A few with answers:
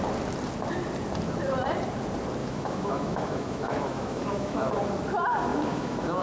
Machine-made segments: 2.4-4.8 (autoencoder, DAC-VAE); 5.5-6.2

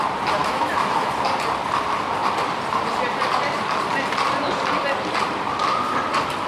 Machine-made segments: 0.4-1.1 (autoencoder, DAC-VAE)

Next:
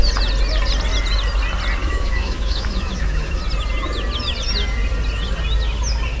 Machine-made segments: 1.8-3.4 (autoencoder, DAC-VAE)

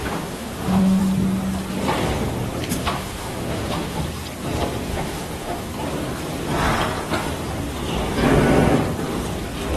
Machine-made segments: 0.0-1.0 (autoencoder, DAC-VAE); 2.8-4.0; 4.9-5.7

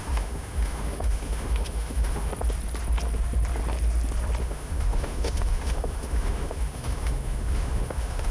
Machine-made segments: 0.0-2.3 (autoencoder, DAC-VAE); 4.4-8.3